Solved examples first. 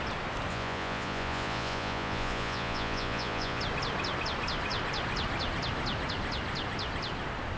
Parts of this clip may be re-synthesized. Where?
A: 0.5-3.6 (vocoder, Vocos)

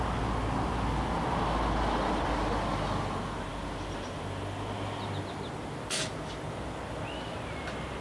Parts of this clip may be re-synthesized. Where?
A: none

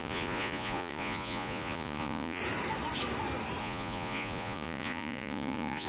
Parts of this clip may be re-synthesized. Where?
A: 0.0-2.4 (vocoder, Vocos); 3.6-5.9

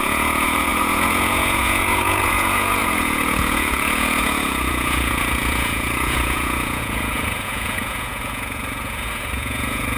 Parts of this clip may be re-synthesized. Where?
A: 0.0-10.0 (vocoder, Vocos)

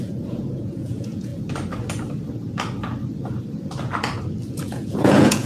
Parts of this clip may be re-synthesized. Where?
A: 0.0-1.3 (vocoder, Vocos); 4.6-5.5